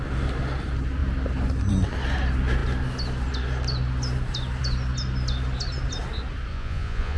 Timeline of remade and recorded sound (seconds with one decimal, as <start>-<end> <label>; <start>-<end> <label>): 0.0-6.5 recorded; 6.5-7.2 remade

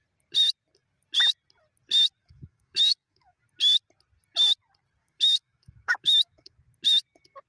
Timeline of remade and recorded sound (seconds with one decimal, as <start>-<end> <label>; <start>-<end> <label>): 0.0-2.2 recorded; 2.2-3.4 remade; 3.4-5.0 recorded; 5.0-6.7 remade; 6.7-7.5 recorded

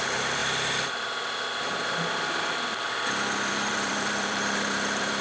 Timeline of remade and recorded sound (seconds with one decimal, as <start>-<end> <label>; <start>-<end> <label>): 0.0-0.4 remade; 0.4-3.5 recorded; 3.5-5.2 remade

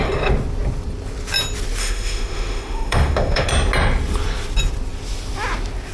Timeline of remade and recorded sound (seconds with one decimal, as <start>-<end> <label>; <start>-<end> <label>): 0.0-1.8 recorded; 1.8-3.5 remade; 3.5-5.9 recorded

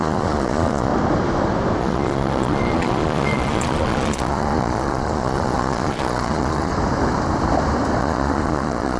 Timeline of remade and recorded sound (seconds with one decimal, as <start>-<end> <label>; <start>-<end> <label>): 0.0-0.9 remade; 0.9-1.8 recorded; 1.8-6.7 remade; 6.7-8.0 recorded; 8.0-9.0 remade